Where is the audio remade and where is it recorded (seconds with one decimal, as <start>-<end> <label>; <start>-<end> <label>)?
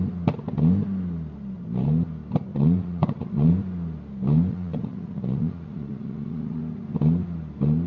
0.0-2.5 recorded; 2.5-3.5 remade; 3.5-4.5 recorded; 4.5-6.6 remade; 6.6-7.9 recorded